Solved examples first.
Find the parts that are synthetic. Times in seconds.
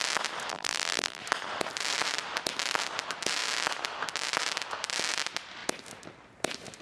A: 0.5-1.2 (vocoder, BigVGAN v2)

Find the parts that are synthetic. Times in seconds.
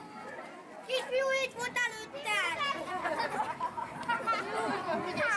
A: none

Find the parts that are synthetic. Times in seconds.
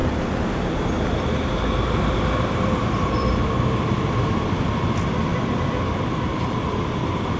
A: 0.0-4.4 (vocoder, BigVGAN v2)